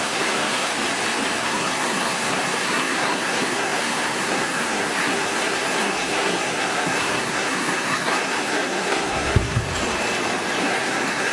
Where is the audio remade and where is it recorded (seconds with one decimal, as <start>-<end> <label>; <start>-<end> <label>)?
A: 0.0-0.7 remade; 0.7-1.4 recorded; 1.4-9.6 remade; 9.6-10.6 recorded; 10.6-11.3 remade